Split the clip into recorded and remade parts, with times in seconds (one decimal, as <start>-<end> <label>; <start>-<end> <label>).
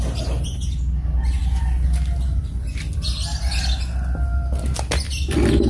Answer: 0.0-5.7 recorded